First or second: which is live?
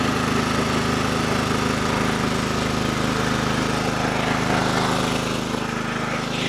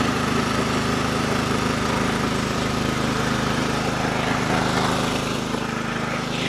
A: first